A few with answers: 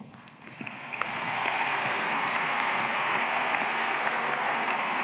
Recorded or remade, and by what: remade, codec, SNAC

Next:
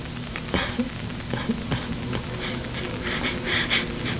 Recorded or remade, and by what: recorded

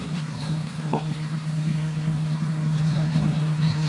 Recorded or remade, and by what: remade, codec, SNAC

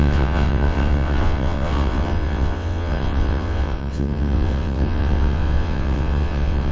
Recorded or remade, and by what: remade, vocoder, WaveNeXt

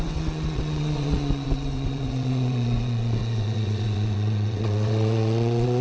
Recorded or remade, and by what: remade, vocoder, WaveNeXt